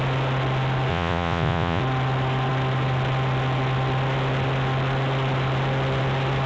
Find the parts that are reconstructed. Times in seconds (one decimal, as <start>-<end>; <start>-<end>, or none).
0.9-1.8